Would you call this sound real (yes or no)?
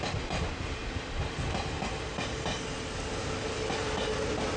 yes